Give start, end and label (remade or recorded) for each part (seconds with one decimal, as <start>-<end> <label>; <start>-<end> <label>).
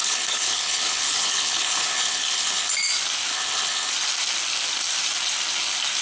0.0-2.7 remade; 2.7-3.3 recorded; 3.3-3.9 remade; 3.9-6.0 recorded